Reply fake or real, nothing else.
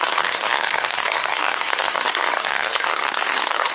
fake